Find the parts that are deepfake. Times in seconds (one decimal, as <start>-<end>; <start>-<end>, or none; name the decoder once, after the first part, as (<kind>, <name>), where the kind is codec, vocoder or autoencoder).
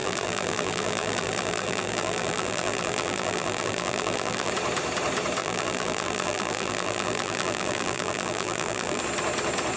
0.0-4.5 (vocoder, BigVGAN v2); 5.4-9.0